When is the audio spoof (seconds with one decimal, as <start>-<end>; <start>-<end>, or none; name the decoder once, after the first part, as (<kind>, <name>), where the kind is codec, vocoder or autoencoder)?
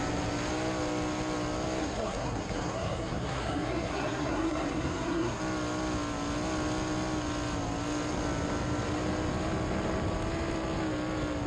1.8-5.4 (codec, SNAC)